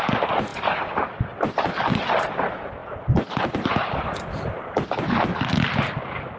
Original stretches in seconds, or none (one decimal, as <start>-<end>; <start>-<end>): 0.0-6.4